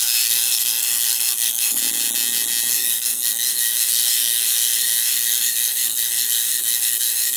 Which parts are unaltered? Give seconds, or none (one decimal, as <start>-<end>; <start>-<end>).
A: 1.8-2.7